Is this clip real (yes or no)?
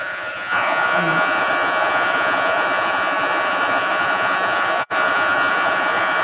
no